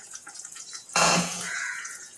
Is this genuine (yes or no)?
no